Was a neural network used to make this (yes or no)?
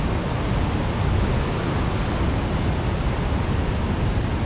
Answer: no